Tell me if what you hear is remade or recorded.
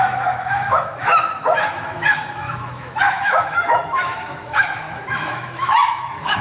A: remade